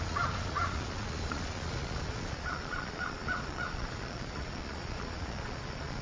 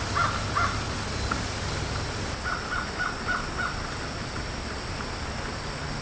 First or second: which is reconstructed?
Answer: first